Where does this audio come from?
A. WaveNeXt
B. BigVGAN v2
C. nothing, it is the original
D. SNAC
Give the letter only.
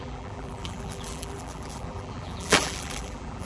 B